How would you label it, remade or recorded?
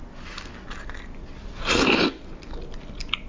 recorded